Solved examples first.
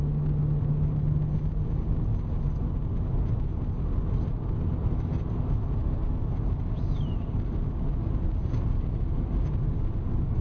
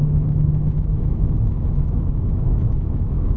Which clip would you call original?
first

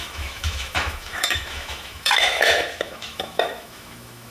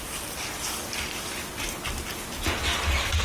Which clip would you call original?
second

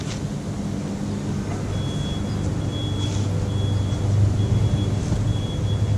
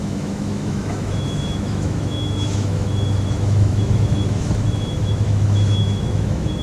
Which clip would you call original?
first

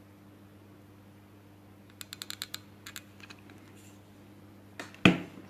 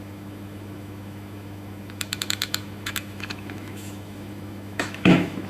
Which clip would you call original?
first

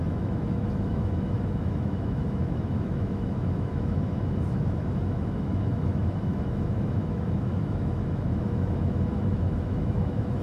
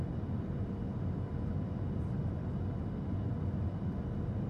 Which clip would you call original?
second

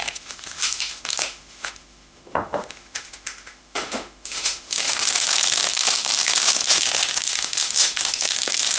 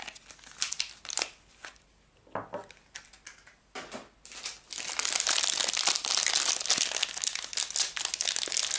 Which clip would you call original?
second